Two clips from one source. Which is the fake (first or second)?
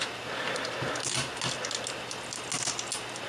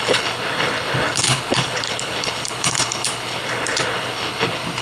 second